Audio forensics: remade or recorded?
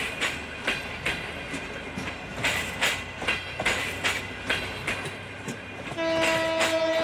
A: recorded